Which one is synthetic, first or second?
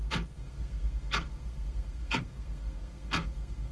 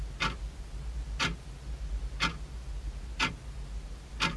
first